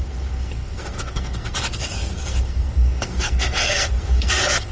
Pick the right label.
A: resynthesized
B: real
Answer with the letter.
A